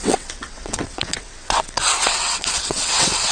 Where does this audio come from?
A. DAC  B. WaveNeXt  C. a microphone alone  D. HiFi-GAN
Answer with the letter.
B